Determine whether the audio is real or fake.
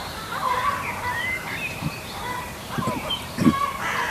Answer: fake